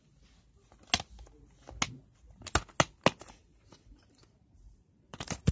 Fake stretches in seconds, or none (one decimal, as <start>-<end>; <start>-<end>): 3.4-5.5